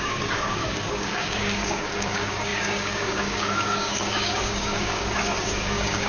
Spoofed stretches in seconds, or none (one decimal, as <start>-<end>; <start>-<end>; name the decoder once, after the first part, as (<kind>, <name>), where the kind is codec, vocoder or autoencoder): 0.0-6.1 (codec, DAC)